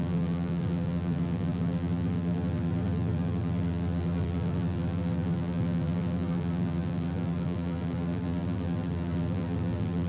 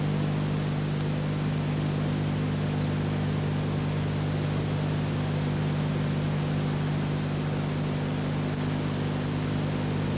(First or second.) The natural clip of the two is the second